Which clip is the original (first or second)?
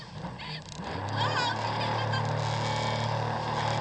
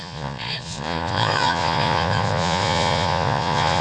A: first